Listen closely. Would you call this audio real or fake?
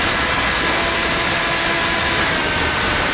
real